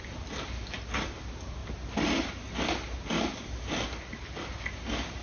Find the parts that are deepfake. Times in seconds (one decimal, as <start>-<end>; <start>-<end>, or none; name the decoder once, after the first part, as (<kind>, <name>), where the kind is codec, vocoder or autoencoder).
none